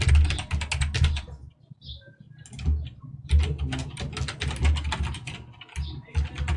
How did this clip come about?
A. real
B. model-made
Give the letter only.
A